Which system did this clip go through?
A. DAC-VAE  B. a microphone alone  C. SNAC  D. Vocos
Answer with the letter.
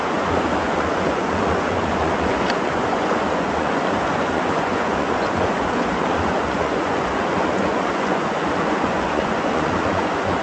D